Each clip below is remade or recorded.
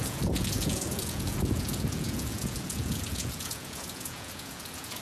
remade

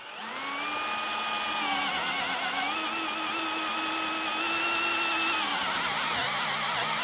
recorded